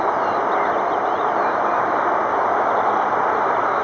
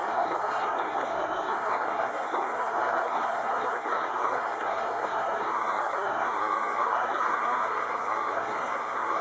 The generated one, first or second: second